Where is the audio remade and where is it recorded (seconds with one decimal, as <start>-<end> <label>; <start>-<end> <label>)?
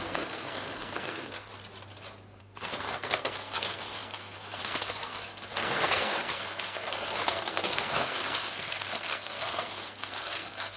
0.0-1.5 remade; 1.5-2.4 recorded; 2.4-10.8 remade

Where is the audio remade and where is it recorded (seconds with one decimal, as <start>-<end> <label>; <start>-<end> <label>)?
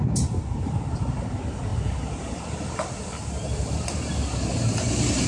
0.0-5.3 recorded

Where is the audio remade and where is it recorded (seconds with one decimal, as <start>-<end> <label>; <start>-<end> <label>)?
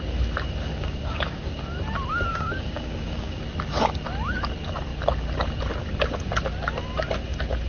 0.0-0.7 recorded; 0.7-1.6 remade; 1.6-2.3 recorded; 2.3-3.4 remade; 3.4-7.7 recorded